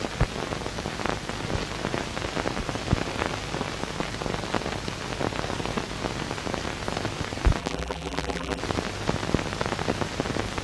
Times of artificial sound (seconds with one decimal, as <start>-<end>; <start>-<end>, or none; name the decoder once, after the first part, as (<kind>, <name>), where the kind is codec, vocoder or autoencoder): 7.6-8.6 (vocoder, BigVGAN v2)